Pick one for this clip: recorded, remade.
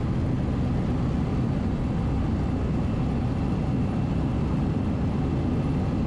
recorded